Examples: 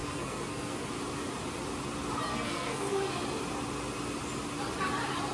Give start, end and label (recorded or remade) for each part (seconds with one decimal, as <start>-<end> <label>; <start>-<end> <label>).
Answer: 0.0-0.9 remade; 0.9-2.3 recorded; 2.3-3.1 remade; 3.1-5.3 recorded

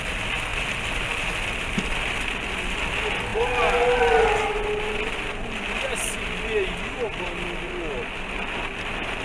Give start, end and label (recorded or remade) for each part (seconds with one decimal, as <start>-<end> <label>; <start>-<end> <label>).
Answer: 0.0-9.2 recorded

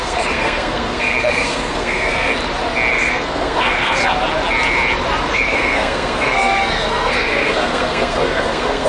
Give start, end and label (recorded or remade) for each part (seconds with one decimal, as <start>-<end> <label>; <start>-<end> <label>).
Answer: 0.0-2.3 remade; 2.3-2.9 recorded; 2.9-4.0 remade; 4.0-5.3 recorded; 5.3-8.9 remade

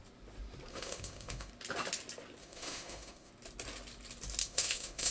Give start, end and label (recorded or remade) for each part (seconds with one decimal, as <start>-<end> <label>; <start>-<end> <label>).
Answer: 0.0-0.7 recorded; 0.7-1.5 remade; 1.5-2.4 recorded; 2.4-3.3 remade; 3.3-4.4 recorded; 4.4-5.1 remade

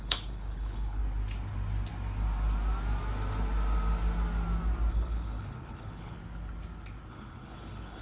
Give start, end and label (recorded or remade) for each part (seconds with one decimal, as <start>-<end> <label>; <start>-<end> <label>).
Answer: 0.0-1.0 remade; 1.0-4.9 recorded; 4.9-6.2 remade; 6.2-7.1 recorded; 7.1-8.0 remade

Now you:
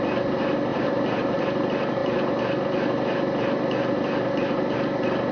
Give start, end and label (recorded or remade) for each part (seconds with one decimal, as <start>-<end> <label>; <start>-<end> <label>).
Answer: 0.0-0.7 recorded; 0.7-1.4 remade; 1.4-5.3 recorded

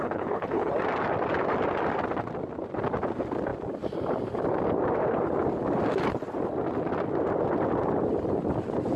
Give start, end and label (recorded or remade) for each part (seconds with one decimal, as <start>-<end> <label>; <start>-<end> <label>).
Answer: 0.0-0.7 remade; 0.7-9.0 recorded